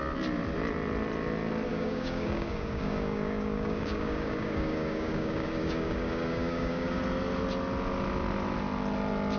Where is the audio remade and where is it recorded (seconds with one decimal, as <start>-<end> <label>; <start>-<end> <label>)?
0.0-1.7 recorded; 1.7-7.0 remade; 7.0-9.4 recorded